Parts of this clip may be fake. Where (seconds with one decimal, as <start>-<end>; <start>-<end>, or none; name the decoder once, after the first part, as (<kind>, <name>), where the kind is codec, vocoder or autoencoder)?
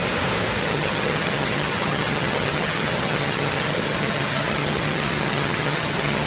0.6-6.3 (vocoder, HiFi-GAN)